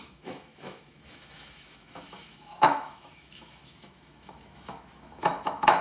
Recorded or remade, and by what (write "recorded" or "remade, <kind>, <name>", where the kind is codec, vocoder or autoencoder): remade, autoencoder, DAC-VAE